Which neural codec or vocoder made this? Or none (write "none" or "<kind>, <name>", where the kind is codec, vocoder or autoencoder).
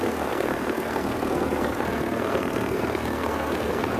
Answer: codec, SNAC